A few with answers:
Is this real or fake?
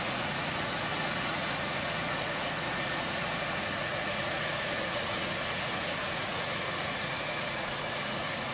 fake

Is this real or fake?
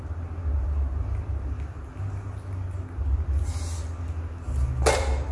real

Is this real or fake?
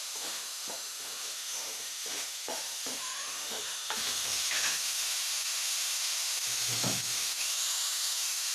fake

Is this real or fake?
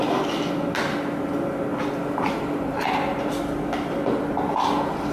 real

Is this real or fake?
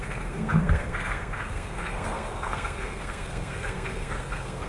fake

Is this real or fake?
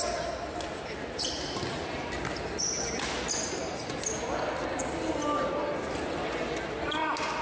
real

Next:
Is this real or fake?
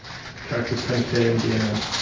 real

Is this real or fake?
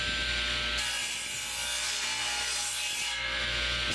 real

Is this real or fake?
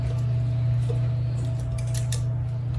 real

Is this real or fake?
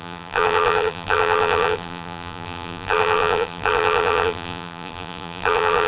fake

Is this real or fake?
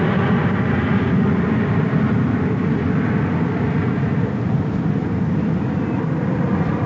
real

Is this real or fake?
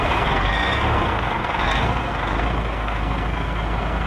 fake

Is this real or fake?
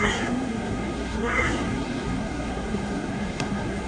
fake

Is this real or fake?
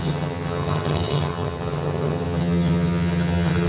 fake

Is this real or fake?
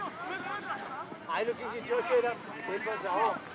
real